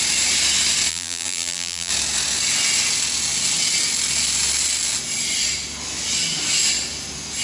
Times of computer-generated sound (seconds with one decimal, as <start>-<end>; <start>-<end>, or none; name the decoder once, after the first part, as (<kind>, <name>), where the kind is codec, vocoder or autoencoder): 0.9-1.9 (vocoder, BigVGAN v2)